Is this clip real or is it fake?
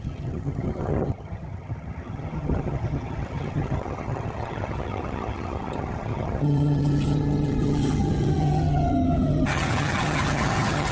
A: fake